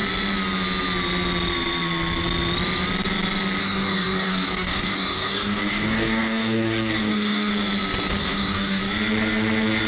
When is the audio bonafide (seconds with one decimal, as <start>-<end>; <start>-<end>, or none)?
0.0-3.6; 7.5-8.2; 8.8-9.9